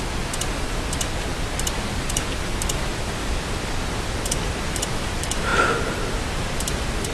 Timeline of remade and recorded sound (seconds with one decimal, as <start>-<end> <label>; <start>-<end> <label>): 0.0-7.1 recorded